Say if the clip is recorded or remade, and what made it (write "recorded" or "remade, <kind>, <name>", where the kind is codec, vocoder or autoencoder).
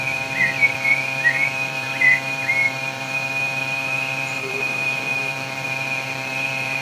remade, vocoder, BigVGAN v2